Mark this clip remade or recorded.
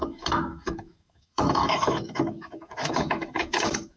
remade